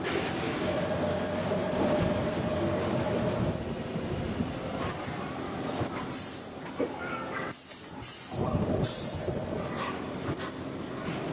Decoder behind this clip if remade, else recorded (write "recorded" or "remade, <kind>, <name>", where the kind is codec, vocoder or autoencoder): recorded